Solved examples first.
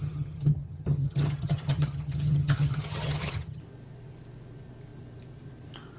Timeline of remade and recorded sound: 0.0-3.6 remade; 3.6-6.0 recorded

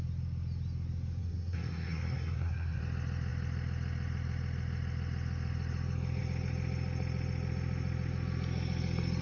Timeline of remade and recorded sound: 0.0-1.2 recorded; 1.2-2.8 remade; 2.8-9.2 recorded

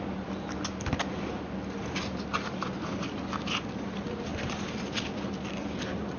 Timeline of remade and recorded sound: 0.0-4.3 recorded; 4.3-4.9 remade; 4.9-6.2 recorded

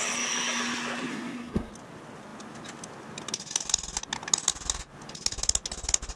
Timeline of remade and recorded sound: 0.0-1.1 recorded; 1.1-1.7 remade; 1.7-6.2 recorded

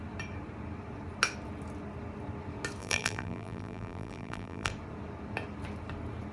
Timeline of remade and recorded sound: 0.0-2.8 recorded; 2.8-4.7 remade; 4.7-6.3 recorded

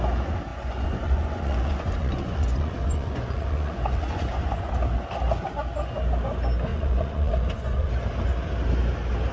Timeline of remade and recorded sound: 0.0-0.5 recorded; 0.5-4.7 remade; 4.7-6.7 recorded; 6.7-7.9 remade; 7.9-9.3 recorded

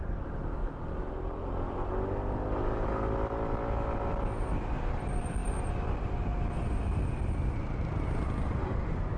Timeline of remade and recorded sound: 0.0-9.2 recorded